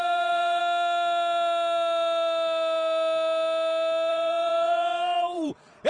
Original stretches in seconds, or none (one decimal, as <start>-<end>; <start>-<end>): 0.6-4.1

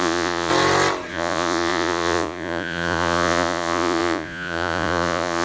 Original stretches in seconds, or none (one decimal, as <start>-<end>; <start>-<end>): 0.5-1.1

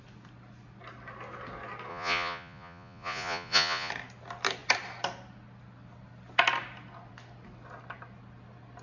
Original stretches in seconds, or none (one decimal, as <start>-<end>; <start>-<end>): 0.0-1.9; 3.9-8.8

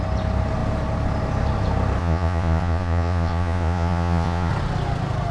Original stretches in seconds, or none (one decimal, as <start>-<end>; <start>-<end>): 0.0-2.0; 4.5-5.3

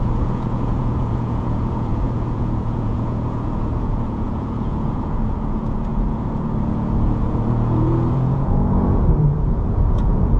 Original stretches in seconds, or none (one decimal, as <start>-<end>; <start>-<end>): none